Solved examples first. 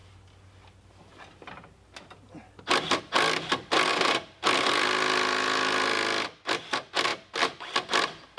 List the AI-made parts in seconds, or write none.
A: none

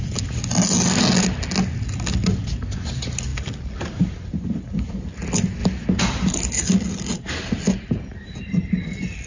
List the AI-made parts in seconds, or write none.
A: none

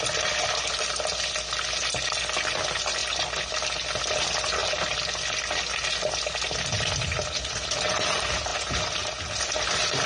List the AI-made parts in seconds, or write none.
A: none

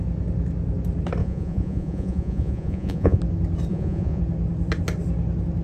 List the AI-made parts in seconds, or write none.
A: 1.2-3.2 (vocoder, Vocos); 3.7-4.2